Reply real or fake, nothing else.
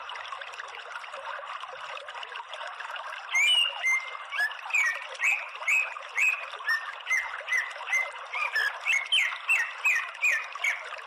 real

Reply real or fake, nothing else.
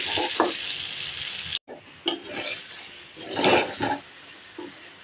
real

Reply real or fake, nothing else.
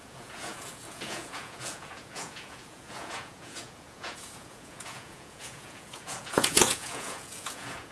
fake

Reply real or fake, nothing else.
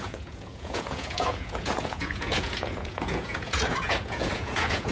fake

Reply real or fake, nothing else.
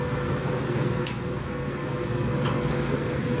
fake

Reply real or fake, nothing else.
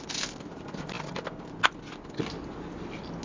real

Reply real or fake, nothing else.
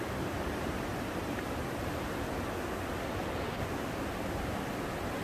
real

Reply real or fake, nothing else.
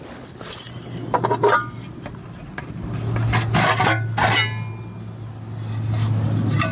real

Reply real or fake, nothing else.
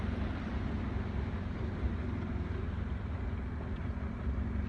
real